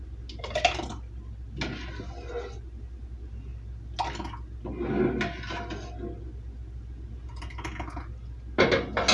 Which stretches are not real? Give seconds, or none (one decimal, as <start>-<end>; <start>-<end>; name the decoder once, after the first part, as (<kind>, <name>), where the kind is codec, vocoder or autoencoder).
none